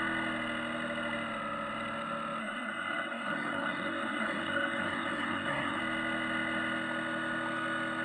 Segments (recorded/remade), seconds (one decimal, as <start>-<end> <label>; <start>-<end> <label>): 0.0-2.4 recorded; 2.4-5.8 remade; 5.8-8.0 recorded